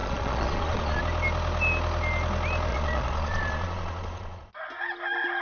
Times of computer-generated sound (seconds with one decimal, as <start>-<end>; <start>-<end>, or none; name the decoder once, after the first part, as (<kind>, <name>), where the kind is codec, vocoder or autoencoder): 0.0-1.0 (vocoder, Vocos); 2.7-4.5